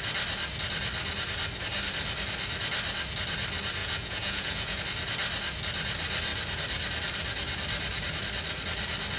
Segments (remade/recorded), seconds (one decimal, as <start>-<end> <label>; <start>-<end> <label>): 0.0-3.8 recorded; 3.8-4.8 remade; 4.8-9.2 recorded